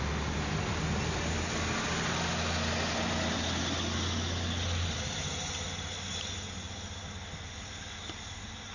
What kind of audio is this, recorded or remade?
recorded